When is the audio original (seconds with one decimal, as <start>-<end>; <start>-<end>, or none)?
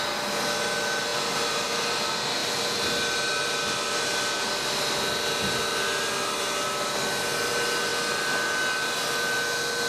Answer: 0.0-9.9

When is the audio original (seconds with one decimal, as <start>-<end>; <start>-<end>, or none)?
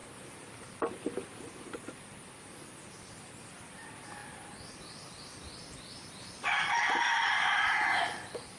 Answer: 2.7-4.2; 7.2-8.6